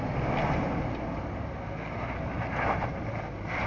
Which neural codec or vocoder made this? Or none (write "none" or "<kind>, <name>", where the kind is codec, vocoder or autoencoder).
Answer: none